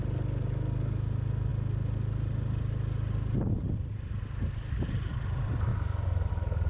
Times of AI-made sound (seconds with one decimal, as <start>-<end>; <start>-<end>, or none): none